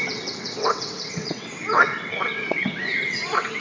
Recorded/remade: remade